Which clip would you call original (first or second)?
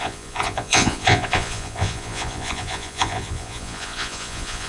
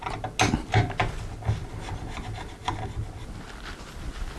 second